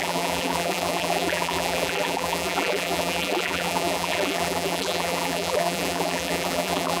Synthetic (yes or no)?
yes